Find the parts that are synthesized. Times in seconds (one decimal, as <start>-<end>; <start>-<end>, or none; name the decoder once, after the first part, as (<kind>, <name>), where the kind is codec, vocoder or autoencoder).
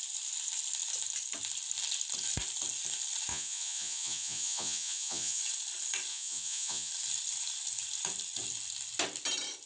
3.3-5.4 (vocoder, Vocos); 6.1-6.9